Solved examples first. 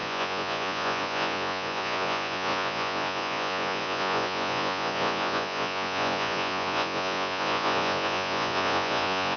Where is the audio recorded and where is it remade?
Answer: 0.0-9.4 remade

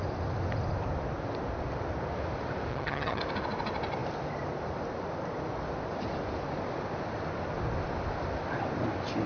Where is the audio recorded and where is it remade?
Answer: 0.0-2.7 recorded; 2.7-3.2 remade; 3.2-9.3 recorded

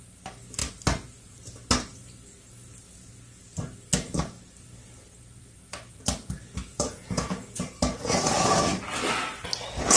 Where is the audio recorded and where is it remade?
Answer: 0.0-6.7 recorded; 6.7-7.7 remade; 7.7-10.0 recorded

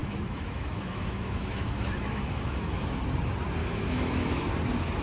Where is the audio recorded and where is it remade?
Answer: 0.0-3.0 remade; 3.0-3.6 recorded; 3.6-4.5 remade; 4.5-5.0 recorded

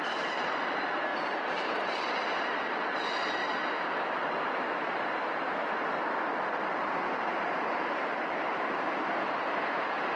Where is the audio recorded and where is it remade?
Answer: 0.0-3.4 remade; 3.4-7.3 recorded; 7.3-10.2 remade

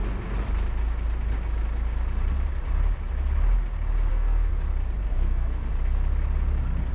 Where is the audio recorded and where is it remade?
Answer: 0.0-4.1 recorded; 4.1-4.5 remade; 4.5-5.1 recorded; 5.1-5.7 remade; 5.7-6.9 recorded

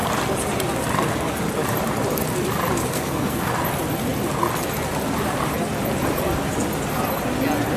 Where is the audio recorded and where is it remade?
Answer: 0.0-2.9 recorded; 2.9-3.5 remade; 3.5-7.8 recorded

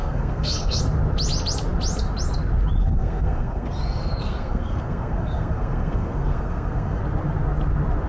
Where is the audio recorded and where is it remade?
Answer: 0.0-0.8 remade; 0.8-2.8 recorded; 2.8-7.0 remade; 7.0-8.1 recorded